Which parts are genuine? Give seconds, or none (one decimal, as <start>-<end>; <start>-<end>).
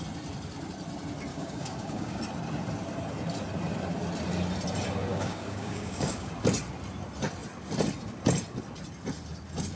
0.0-1.3; 2.2-5.1; 6.3-9.8